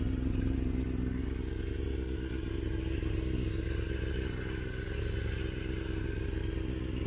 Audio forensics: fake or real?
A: real